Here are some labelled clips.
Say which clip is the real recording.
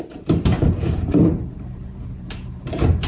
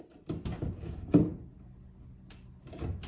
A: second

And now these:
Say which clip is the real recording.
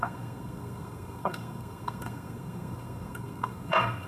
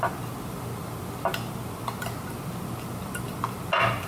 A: second